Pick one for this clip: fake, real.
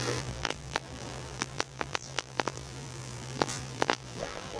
fake